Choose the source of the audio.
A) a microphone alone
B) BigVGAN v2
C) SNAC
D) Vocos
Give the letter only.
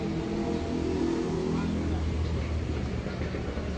A